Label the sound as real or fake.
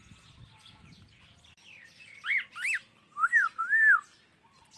real